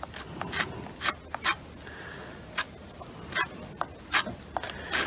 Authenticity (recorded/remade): recorded